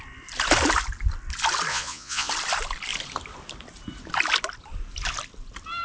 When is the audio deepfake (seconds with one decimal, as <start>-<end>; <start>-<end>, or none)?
1.7-2.3